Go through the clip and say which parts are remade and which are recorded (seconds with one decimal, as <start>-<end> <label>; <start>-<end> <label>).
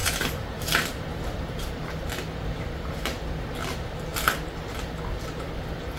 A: 0.0-1.4 remade; 1.4-6.0 recorded